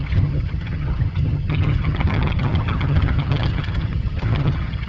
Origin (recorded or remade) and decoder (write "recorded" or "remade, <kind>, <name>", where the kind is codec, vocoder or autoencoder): remade, vocoder, HiFi-GAN